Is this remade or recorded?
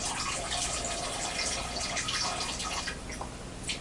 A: recorded